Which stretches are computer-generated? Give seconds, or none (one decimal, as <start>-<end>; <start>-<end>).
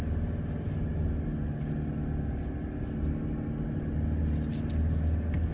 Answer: none